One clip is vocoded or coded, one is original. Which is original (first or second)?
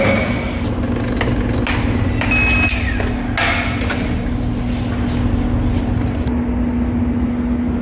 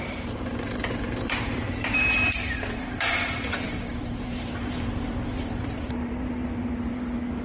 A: first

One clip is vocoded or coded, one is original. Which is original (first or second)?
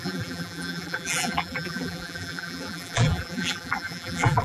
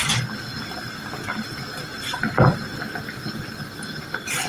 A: second